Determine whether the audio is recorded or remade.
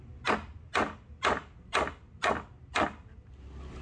recorded